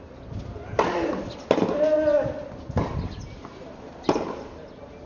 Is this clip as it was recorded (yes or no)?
yes